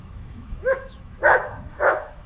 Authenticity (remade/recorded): remade